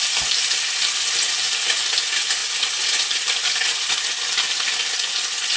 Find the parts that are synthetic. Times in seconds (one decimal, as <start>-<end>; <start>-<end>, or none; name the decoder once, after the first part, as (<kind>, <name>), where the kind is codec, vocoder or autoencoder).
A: none